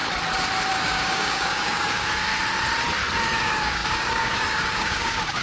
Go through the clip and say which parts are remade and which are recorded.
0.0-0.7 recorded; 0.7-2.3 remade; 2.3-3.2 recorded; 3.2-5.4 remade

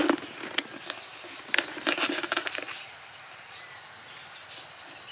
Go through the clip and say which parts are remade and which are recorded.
0.0-5.1 recorded

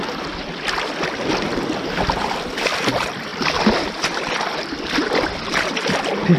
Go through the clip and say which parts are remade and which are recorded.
0.0-6.4 recorded

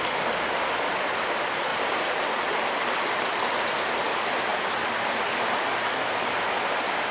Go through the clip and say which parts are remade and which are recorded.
0.0-1.7 recorded; 1.7-2.6 remade; 2.6-7.1 recorded